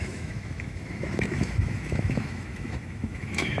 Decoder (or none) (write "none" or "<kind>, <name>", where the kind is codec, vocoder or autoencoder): autoencoder, DAC-VAE